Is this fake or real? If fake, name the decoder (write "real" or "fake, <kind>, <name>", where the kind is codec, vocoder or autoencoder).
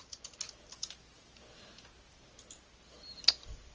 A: real